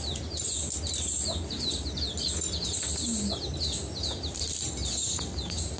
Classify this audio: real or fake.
real